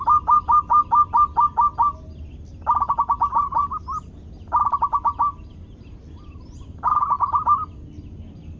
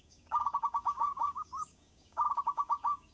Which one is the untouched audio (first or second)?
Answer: first